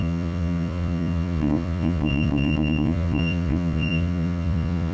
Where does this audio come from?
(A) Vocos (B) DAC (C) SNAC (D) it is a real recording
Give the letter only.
A